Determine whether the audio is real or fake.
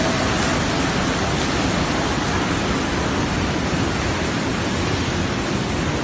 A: real